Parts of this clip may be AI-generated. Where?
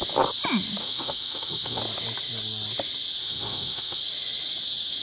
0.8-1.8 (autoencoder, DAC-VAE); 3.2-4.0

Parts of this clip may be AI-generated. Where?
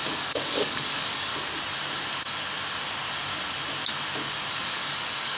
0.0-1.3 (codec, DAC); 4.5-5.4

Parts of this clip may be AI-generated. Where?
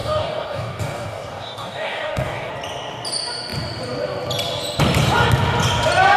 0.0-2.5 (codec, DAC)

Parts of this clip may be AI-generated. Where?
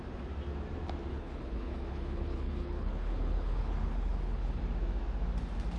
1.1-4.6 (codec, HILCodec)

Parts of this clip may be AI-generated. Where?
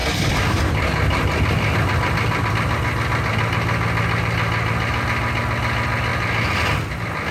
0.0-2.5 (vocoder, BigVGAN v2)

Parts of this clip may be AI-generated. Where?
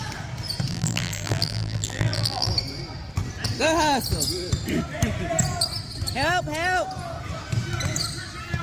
0.7-2.5 (vocoder, BigVGAN v2)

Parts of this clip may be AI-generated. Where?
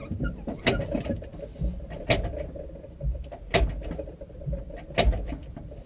none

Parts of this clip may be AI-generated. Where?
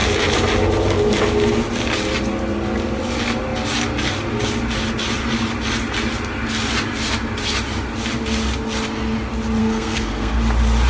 9.6-10.4 (codec, SNAC)